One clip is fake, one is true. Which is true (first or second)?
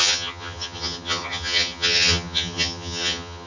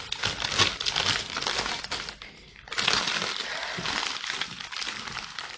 second